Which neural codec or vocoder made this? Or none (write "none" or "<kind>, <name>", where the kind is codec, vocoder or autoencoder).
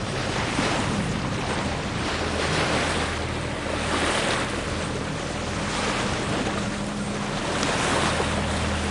none